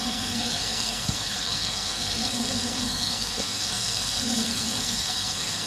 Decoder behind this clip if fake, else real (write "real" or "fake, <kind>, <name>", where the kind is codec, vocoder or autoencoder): fake, codec, SNAC